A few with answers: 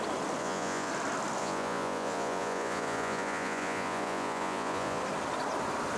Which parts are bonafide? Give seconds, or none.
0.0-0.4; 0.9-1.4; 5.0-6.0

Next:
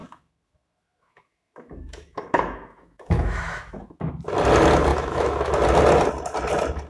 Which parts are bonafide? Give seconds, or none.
4.1-4.9; 5.5-6.9

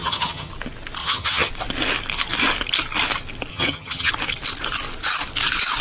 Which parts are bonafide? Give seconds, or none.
0.5-1.0; 1.5-3.5; 4.1-5.8

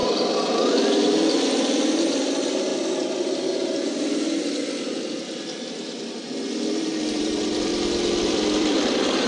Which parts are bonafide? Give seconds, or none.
0.0-1.0; 2.7-6.5; 7.7-8.2

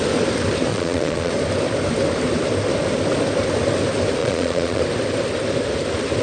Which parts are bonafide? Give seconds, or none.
0.0-0.7; 1.3-4.2; 4.8-6.2

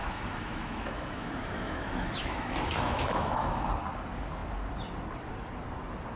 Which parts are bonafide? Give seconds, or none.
3.7-6.2

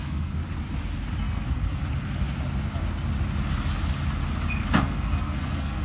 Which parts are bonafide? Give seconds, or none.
0.4-1.2; 1.8-4.8